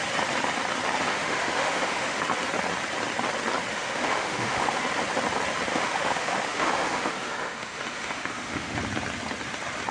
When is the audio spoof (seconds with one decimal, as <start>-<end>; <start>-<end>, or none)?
1.1-2.2; 3.7-4.8; 5.7-8.8